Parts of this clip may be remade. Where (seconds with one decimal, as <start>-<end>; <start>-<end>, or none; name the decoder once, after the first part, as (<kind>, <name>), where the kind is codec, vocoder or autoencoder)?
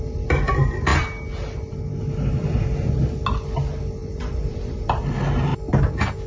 4.0-5.0 (vocoder, BigVGAN v2)